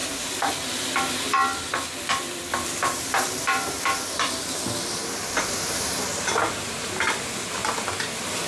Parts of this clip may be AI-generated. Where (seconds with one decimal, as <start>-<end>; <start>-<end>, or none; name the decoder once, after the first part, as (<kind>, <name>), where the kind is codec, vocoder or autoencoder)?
0.0-8.5 (vocoder, BigVGAN v2)